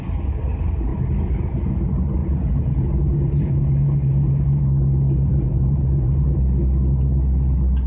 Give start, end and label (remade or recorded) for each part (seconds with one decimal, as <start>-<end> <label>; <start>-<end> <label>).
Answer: 0.0-2.2 recorded; 2.2-4.6 remade; 4.6-5.3 recorded; 5.3-6.3 remade; 6.3-7.9 recorded